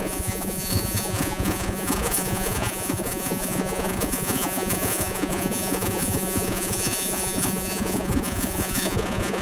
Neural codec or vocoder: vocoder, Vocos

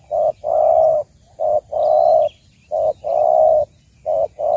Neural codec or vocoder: none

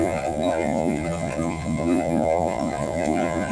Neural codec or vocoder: vocoder, Vocos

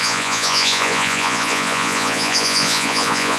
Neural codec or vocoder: vocoder, Vocos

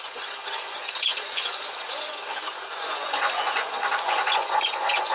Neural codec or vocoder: vocoder, Vocos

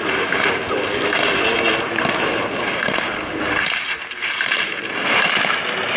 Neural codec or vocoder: none